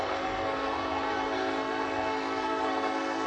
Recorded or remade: remade